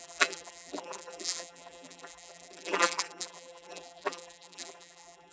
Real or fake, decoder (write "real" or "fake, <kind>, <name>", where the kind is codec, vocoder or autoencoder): fake, vocoder, BigVGAN v2